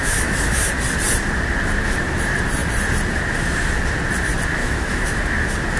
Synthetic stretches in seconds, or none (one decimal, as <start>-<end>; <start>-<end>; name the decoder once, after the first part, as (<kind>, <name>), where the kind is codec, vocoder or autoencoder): 0.0-0.7 (autoencoder, DAC-VAE); 4.6-5.2